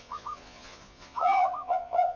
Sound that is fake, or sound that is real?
fake